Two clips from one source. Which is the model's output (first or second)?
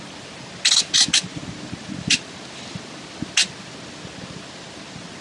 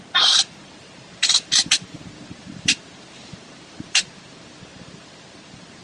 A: second